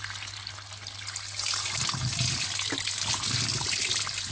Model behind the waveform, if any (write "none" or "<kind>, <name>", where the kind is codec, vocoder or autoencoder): none